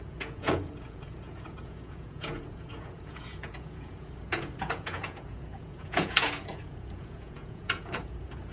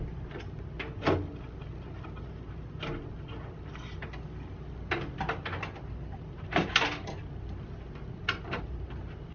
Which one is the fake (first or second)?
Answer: first